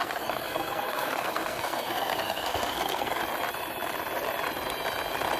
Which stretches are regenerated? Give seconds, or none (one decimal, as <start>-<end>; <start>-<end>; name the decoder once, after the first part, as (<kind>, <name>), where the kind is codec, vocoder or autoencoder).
0.0-3.2 (codec, SNAC)